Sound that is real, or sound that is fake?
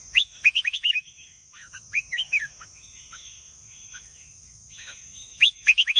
fake